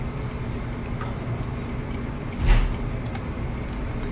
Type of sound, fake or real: real